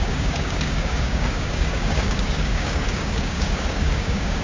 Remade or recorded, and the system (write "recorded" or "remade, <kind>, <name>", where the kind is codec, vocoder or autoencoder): remade, codec, DAC